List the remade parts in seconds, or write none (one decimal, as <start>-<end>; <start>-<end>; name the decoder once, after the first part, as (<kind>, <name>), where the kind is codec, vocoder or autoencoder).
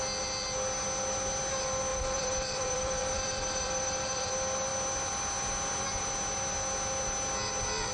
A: 1.9-4.3 (vocoder, BigVGAN v2)